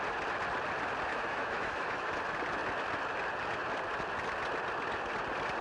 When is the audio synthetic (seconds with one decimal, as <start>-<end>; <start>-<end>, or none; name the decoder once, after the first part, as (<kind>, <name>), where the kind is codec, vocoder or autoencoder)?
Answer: 1.1-2.1 (autoencoder, DAC-VAE)